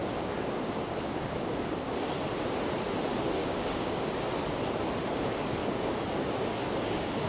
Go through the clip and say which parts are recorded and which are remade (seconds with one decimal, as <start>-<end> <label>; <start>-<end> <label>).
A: 0.0-1.4 remade; 1.4-3.4 recorded; 3.4-4.1 remade; 4.1-5.6 recorded; 5.6-7.3 remade